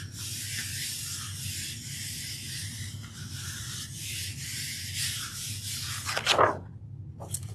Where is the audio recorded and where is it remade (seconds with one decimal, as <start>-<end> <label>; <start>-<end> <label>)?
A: 0.0-7.5 recorded